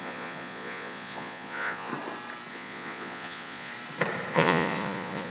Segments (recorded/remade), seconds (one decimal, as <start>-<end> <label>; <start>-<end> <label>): 0.0-1.9 remade; 1.9-2.5 recorded; 2.5-3.7 remade; 3.7-4.3 recorded; 4.3-5.3 remade